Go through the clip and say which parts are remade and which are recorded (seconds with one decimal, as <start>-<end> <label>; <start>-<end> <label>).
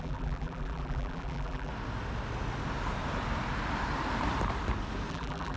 0.0-1.7 remade; 1.7-5.1 recorded; 5.1-5.6 remade